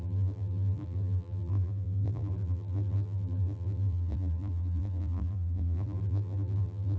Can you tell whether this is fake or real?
fake